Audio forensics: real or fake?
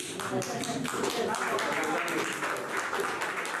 real